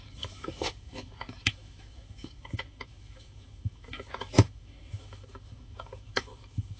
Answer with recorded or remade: remade